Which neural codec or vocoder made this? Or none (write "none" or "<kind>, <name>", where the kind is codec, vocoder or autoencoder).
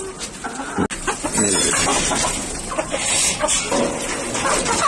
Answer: none